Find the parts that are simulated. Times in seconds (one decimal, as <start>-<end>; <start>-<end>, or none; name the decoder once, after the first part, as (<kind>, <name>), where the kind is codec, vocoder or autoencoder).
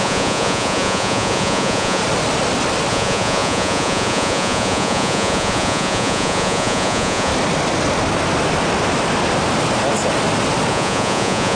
0.0-2.0 (vocoder, Vocos); 2.9-7.3; 10.7-11.6